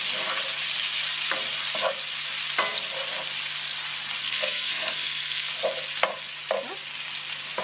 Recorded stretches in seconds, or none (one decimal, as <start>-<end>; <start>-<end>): 0.0-4.2; 5.5-7.6